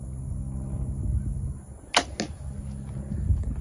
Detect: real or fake real